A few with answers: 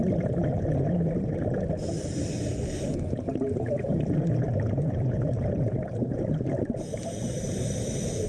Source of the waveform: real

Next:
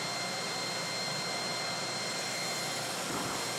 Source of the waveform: fake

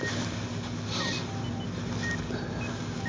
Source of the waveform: real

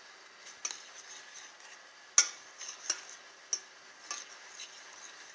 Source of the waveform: real